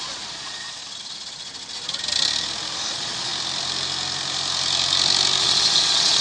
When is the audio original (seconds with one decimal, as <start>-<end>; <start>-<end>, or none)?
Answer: 0.8-2.9; 3.3-5.4